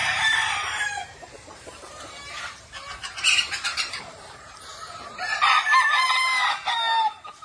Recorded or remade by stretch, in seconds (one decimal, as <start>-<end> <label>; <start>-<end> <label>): 0.0-2.4 remade; 2.4-3.0 recorded; 3.0-5.7 remade; 5.7-7.4 recorded

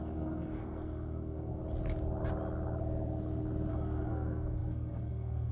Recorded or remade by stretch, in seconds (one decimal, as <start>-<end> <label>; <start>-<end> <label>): 0.0-1.6 remade; 1.6-3.7 recorded; 3.7-5.5 remade